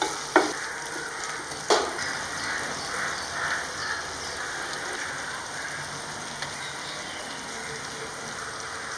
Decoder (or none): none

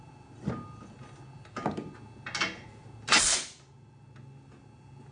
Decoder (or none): none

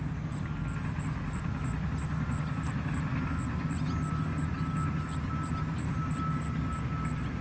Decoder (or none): none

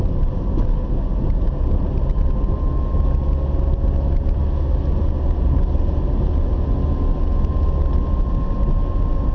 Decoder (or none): none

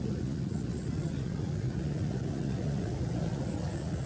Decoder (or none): vocoder, Vocos